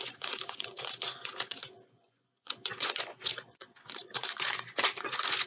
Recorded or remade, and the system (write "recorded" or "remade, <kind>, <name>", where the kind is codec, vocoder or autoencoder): remade, vocoder, Vocos